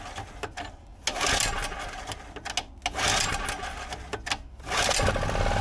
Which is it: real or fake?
real